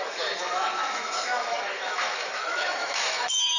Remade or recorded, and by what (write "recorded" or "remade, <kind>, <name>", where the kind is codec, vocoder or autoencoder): remade, autoencoder, DAC-VAE